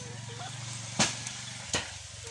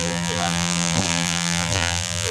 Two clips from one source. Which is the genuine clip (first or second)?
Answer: first